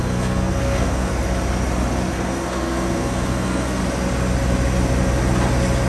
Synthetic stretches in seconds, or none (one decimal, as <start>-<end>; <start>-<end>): 0.0-1.1; 2.1-3.8